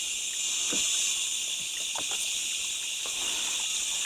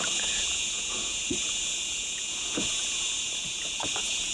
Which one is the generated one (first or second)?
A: second